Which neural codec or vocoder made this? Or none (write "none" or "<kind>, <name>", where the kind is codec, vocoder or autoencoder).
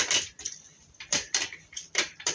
vocoder, BigVGAN v2